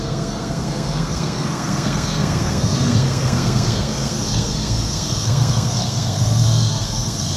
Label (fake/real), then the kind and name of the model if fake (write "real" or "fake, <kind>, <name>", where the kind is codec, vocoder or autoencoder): fake, codec, SNAC